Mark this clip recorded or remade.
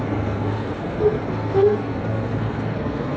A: remade